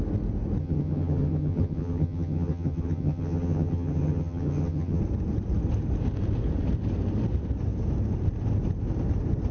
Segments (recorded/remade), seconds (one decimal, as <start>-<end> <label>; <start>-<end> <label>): 0.0-0.6 recorded; 0.6-5.0 remade; 5.0-9.5 recorded